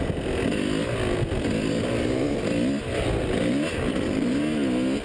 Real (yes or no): yes